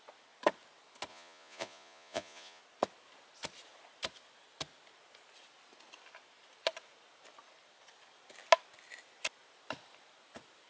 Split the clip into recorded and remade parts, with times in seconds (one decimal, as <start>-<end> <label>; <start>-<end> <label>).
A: 0.0-1.1 recorded; 1.1-2.6 remade; 2.6-10.7 recorded